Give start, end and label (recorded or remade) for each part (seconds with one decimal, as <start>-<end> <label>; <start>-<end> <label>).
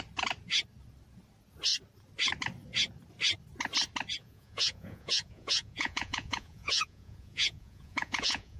0.0-4.2 recorded; 4.2-8.6 remade